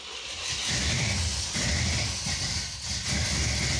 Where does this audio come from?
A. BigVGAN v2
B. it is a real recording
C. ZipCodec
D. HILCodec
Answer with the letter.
B